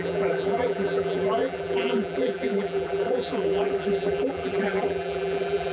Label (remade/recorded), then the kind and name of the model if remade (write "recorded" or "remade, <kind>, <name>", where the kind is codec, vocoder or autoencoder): remade, vocoder, BigVGAN v2